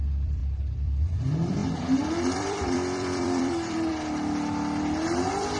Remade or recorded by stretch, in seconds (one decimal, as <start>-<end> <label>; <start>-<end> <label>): 0.0-1.6 remade; 1.6-2.1 recorded; 2.1-3.9 remade; 3.9-4.8 recorded; 4.8-5.6 remade